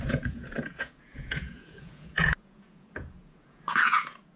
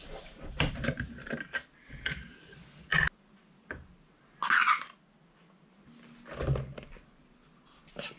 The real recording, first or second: second